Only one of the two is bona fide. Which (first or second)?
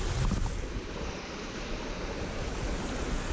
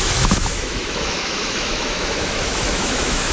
first